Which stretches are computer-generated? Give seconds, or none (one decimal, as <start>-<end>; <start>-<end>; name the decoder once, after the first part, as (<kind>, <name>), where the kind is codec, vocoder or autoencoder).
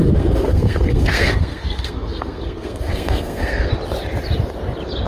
0.0-3.7 (codec, SNAC)